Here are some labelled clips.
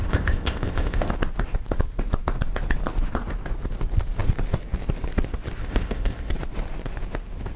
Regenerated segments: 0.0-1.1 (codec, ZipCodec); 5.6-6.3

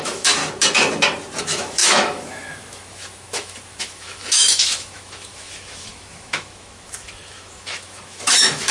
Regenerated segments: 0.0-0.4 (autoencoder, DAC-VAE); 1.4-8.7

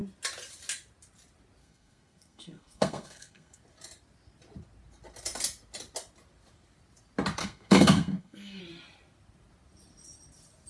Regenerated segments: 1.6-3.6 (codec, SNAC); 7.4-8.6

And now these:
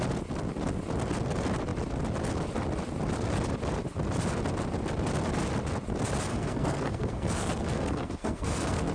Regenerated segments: 6.3-8.9 (codec, SNAC)

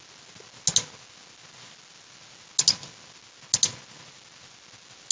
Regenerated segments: none